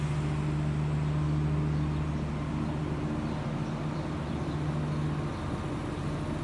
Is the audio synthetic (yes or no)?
no